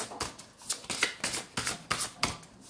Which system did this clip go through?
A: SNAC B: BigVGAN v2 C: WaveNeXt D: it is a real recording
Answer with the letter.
D